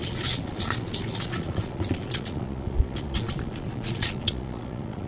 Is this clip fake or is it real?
fake